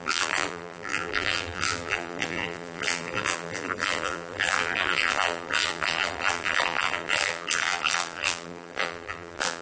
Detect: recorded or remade remade